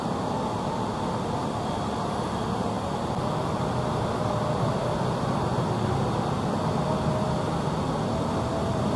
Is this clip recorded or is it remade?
recorded